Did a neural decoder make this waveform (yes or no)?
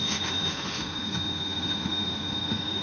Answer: yes